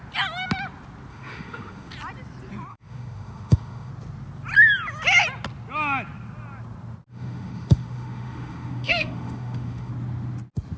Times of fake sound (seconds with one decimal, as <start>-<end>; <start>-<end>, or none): 1.1-1.9; 2.7-3.9; 7.1-9.9